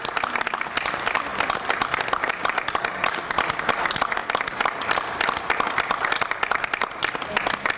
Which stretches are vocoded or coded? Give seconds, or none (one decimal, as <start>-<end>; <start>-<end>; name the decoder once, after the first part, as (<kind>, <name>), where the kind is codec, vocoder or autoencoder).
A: none